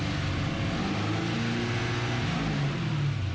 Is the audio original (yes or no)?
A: yes